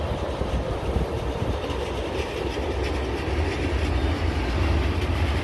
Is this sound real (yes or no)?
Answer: yes